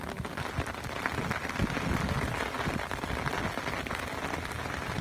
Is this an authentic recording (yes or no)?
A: yes